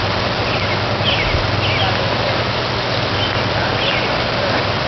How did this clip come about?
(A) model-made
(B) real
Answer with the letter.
B